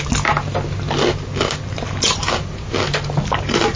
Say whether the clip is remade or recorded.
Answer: recorded